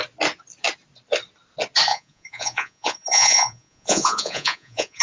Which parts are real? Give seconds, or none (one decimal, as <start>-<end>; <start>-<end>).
0.0-1.9